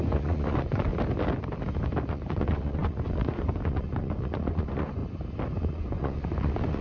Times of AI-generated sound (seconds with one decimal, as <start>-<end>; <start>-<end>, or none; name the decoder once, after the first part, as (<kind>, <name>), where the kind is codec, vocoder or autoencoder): 0.0-0.9 (vocoder, Vocos); 2.1-5.0; 5.6-6.8